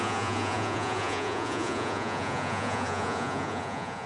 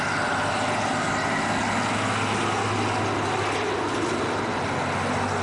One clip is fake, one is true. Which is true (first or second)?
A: second